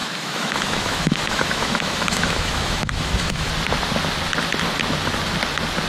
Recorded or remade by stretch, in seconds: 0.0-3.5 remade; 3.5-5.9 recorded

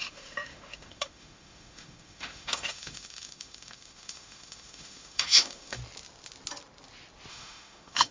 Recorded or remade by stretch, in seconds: 0.0-5.8 remade; 5.8-7.3 recorded; 7.3-8.1 remade